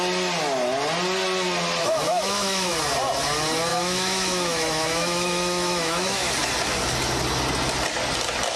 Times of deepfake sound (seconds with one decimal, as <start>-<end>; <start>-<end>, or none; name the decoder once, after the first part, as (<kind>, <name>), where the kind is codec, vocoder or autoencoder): 1.8-2.7 (autoencoder, DAC-VAE); 3.7-6.3